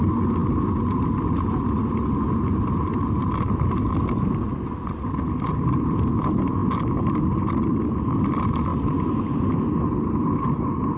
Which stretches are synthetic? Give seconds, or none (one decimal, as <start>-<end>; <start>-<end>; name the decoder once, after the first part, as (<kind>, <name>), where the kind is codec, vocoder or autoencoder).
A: none